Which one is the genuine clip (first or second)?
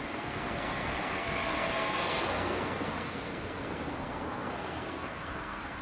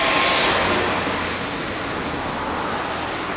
second